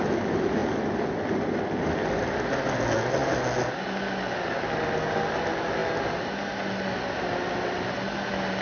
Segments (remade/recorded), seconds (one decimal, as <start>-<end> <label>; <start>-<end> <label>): 0.0-8.6 recorded